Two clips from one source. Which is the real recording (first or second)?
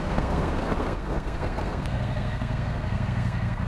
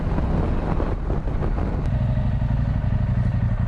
second